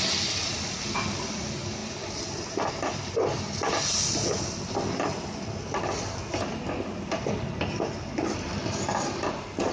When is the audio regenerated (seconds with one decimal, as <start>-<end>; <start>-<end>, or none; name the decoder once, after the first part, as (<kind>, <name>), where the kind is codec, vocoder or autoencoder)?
none